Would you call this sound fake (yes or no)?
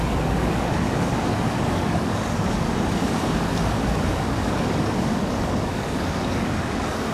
yes